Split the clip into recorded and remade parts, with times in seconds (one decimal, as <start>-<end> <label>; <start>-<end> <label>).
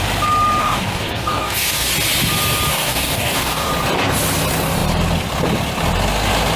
0.0-0.6 recorded; 0.6-1.9 remade; 1.9-2.7 recorded; 2.7-3.7 remade; 3.7-6.6 recorded